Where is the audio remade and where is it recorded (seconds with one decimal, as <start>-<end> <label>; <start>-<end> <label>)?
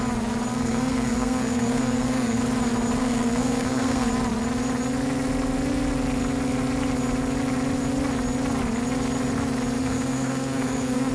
0.0-0.5 recorded; 0.5-2.4 remade; 2.4-3.0 recorded; 3.0-4.1 remade; 4.1-9.8 recorded; 9.8-11.1 remade